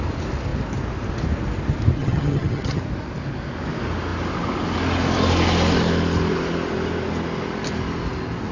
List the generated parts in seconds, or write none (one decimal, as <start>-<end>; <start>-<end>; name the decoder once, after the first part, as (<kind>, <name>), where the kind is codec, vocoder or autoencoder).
2.0-2.8 (vocoder, HiFi-GAN)